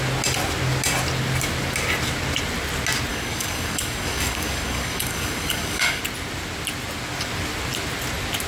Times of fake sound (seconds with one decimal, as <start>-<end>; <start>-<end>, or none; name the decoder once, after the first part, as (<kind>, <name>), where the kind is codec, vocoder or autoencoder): 3.1-6.0 (codec, DAC)